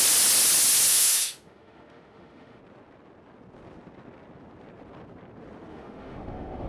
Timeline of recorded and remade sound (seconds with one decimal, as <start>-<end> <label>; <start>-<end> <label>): 0.0-0.9 recorded; 0.9-2.6 remade; 2.6-5.7 recorded; 5.7-6.7 remade